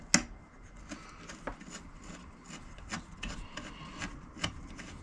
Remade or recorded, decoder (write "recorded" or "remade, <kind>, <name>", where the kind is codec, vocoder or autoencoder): recorded